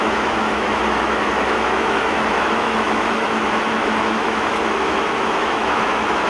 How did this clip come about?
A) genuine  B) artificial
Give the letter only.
B